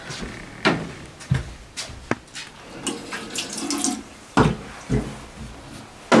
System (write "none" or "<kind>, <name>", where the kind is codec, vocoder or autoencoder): none